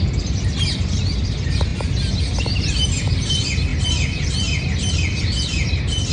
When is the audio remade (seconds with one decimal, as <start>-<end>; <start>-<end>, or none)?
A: none